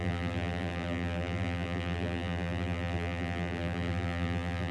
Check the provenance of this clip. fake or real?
fake